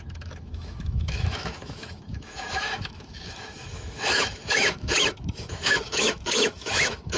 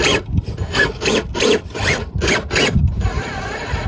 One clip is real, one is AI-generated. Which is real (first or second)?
second